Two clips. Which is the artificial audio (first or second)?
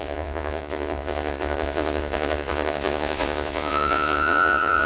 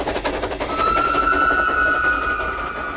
first